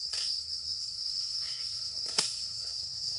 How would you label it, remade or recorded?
remade